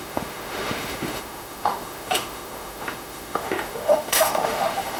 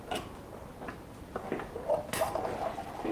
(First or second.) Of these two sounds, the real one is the second